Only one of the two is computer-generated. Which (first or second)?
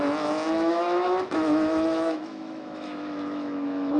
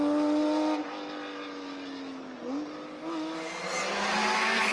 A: first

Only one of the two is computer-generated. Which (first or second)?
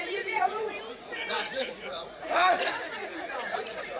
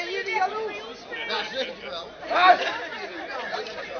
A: first